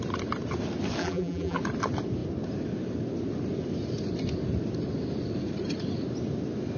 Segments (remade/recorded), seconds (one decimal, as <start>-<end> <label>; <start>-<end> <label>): 0.0-1.0 recorded; 1.0-1.6 remade; 1.6-6.8 recorded

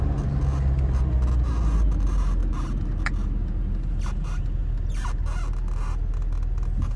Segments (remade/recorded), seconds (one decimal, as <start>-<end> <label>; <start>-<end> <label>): 0.0-7.0 recorded

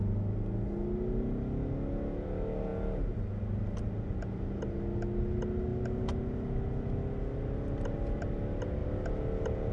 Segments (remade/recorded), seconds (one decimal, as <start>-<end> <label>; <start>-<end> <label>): 0.0-9.7 recorded

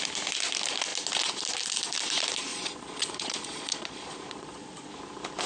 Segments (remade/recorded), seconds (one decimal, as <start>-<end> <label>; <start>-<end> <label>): 0.0-2.5 recorded; 2.5-4.9 remade; 4.9-5.5 recorded

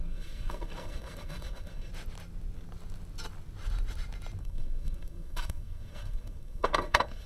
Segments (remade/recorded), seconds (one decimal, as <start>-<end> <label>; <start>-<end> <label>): 0.0-1.9 remade; 1.9-4.4 recorded; 4.4-7.3 remade